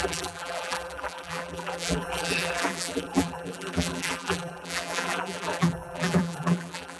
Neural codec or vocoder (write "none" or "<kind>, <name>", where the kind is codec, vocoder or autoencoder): vocoder, BigVGAN v2